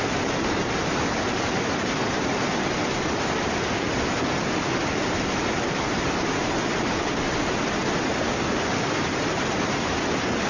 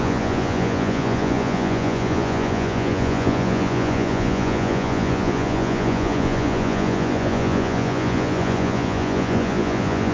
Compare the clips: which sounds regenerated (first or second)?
second